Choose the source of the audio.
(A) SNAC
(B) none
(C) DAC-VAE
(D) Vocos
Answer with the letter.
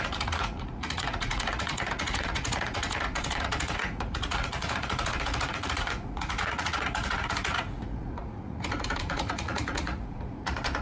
D